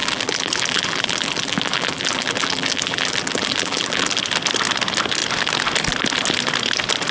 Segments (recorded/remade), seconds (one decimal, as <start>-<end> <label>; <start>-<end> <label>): 0.0-4.2 remade; 4.2-7.1 recorded